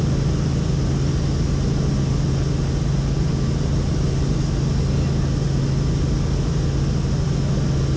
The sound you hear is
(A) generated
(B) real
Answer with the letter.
B